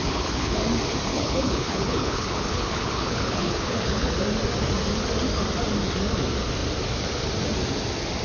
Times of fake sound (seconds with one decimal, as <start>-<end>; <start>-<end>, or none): 0.0-0.6; 1.1-4.1